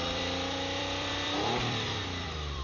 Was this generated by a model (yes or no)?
yes